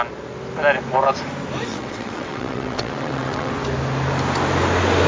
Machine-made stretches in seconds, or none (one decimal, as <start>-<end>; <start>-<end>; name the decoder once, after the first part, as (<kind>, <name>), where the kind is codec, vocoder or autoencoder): 1.7-3.5 (vocoder, WaveNeXt)